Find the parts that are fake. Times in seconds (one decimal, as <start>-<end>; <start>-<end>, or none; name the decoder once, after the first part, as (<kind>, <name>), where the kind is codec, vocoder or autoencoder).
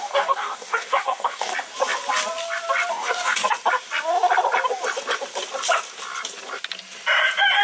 0.0-1.5 (codec, DAC); 2.9-3.4